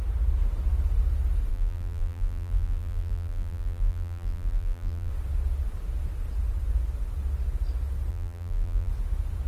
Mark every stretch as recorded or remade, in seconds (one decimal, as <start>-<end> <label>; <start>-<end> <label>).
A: 0.0-1.5 recorded; 1.5-5.1 remade; 5.1-8.1 recorded; 8.1-8.9 remade; 8.9-9.5 recorded

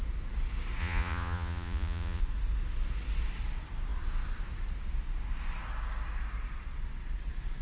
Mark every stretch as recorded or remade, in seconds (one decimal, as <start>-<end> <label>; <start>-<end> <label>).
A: 0.0-0.8 recorded; 0.8-2.2 remade; 2.2-7.6 recorded